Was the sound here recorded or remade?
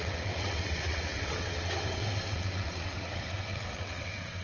remade